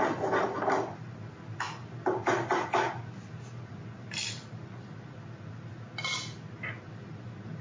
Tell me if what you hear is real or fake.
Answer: real